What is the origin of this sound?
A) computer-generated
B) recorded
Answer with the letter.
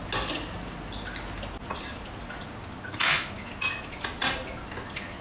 B